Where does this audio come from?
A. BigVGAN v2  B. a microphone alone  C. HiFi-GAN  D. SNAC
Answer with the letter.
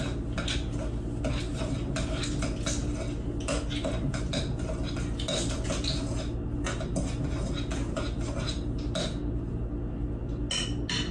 B